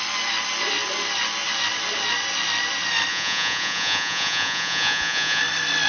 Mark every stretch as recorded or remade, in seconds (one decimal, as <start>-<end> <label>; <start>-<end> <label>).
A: 0.0-3.1 recorded; 3.1-5.4 remade; 5.4-5.9 recorded